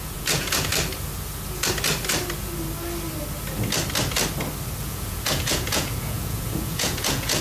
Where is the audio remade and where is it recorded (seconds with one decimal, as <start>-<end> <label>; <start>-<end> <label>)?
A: 0.0-0.7 remade; 0.7-4.8 recorded; 4.8-7.4 remade